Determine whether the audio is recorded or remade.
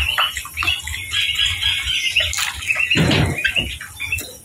recorded